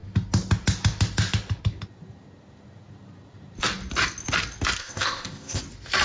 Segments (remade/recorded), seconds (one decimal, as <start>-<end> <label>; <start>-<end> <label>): 0.0-4.8 recorded; 4.8-5.6 remade; 5.6-6.0 recorded